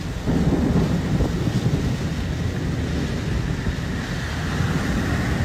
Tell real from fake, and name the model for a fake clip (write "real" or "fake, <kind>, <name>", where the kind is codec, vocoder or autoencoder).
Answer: real